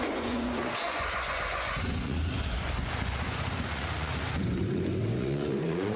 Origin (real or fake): fake